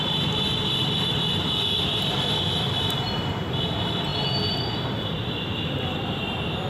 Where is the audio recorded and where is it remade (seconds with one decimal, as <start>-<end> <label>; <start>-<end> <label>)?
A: 0.0-6.7 recorded

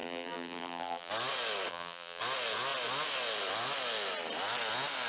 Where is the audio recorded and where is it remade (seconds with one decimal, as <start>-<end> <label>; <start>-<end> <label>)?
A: 0.0-1.1 remade; 1.1-1.7 recorded; 1.7-2.2 remade; 2.2-5.1 recorded